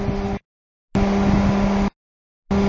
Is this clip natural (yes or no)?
yes